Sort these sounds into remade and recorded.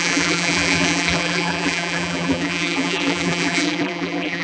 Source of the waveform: remade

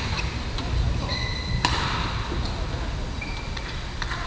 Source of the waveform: recorded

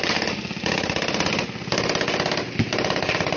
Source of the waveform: recorded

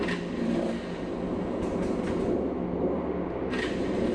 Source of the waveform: recorded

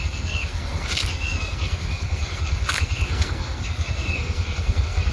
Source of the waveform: remade